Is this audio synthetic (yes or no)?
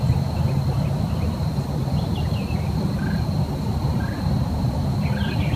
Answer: no